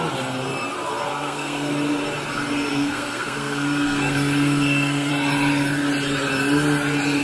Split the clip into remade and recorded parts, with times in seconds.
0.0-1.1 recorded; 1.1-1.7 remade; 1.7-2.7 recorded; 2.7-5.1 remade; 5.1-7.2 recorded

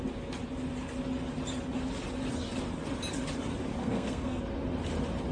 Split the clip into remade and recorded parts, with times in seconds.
0.0-3.8 recorded; 3.8-4.4 remade; 4.4-5.3 recorded

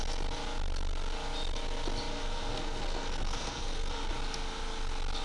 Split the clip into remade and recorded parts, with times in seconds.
0.0-2.1 recorded; 2.1-4.1 remade; 4.1-5.2 recorded

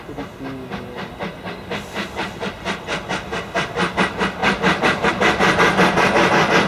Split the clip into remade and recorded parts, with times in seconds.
0.0-6.7 recorded

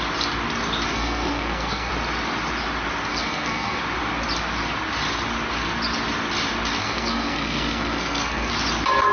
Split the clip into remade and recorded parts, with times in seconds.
0.0-0.9 recorded; 0.9-1.9 remade; 1.9-3.1 recorded; 3.1-3.8 remade; 3.8-6.8 recorded; 6.8-8.5 remade; 8.5-9.1 recorded

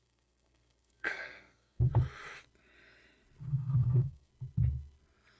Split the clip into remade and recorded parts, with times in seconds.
0.0-1.9 remade; 1.9-3.4 recorded; 3.4-4.3 remade; 4.3-5.4 recorded

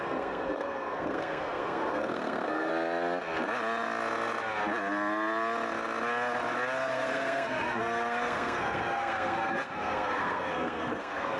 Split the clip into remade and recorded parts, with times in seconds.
0.0-2.7 remade; 2.7-6.9 recorded; 6.9-11.4 remade

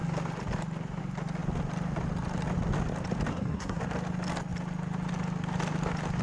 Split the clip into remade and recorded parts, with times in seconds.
0.0-3.3 recorded; 3.3-3.8 remade; 3.8-6.2 recorded